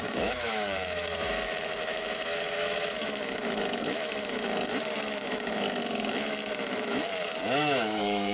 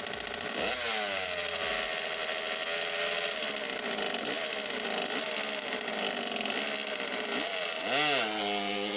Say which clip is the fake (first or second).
first